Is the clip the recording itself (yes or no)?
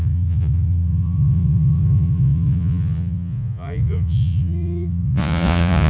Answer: no